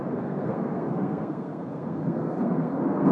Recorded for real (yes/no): no